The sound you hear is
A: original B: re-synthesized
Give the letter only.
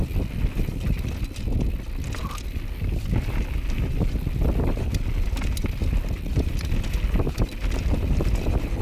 A